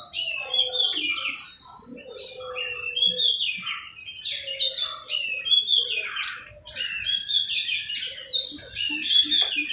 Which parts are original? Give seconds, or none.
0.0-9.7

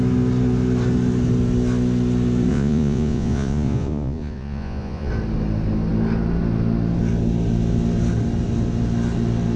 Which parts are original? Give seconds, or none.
0.0-2.5; 5.1-9.6

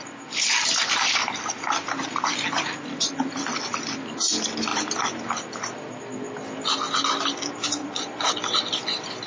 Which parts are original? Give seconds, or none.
0.0-7.8; 8.3-9.3

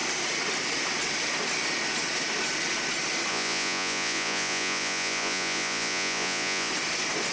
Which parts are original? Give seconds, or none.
0.0-3.3; 6.7-7.3

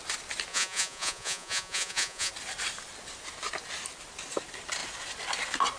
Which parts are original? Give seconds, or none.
0.0-0.5; 2.3-5.8

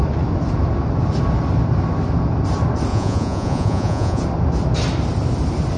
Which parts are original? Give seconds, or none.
0.0-2.9; 4.2-5.8

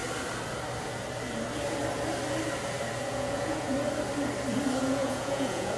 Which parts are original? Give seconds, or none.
0.0-3.0; 3.7-4.8